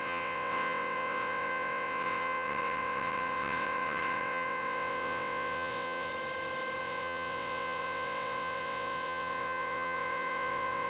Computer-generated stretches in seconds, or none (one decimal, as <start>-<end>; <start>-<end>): 0.0-6.1; 6.8-10.9